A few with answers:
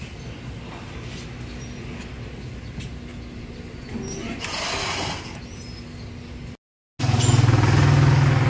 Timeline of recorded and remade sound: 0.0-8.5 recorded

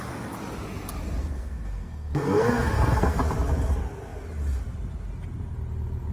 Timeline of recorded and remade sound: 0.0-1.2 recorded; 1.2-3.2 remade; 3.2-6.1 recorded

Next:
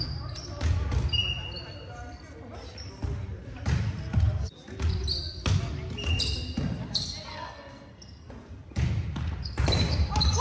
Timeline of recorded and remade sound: 0.0-7.3 recorded; 7.3-8.3 remade; 8.3-10.4 recorded